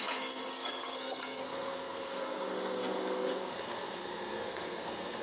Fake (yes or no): yes